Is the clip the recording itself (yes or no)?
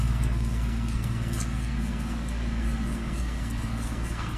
no